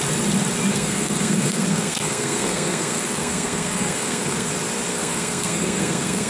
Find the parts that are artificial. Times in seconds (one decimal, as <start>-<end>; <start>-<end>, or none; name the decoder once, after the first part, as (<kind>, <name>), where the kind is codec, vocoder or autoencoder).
0.7-4.5 (codec, SNAC); 4.9-6.3